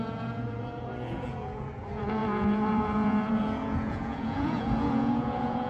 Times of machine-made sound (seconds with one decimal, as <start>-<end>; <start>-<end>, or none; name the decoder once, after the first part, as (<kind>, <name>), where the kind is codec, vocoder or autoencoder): 0.0-5.7 (vocoder, Vocos)